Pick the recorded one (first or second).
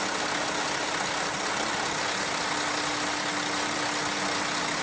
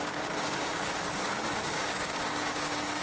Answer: first